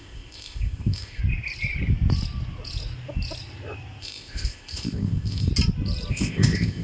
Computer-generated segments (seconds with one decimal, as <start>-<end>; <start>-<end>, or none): 0.0-1.2; 4.0-5.5; 6.1-6.8